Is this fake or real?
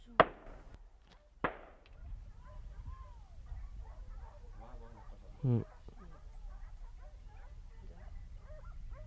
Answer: real